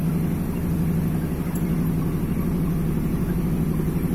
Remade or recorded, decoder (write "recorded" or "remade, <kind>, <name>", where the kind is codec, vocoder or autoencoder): recorded